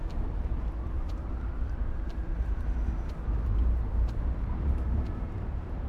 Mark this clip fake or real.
fake